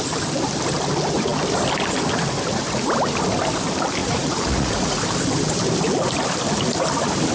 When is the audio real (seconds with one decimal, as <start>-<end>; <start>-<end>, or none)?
0.0-4.0; 5.0-7.3

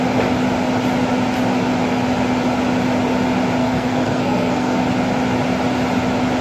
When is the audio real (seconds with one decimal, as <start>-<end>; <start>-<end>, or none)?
0.0-3.6; 4.8-6.4

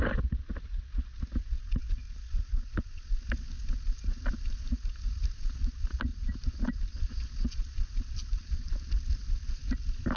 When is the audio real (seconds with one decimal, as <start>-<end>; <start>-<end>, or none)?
0.0-10.2